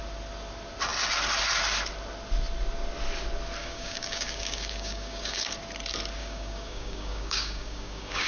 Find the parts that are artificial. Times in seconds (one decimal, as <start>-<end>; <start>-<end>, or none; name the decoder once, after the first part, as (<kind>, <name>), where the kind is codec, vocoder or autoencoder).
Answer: 3.6-5.5 (codec, DAC); 6.2-8.3